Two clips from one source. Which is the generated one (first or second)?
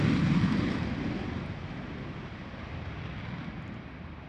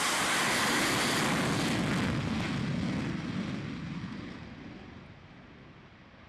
first